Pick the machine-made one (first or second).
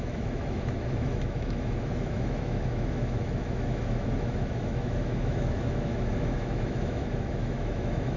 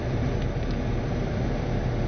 first